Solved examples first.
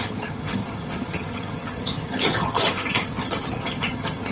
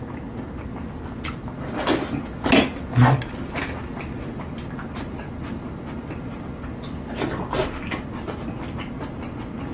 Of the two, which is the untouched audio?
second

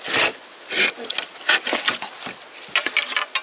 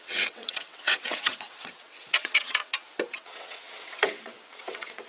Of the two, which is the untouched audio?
first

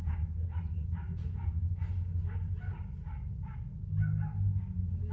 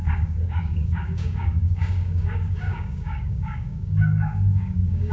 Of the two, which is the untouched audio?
first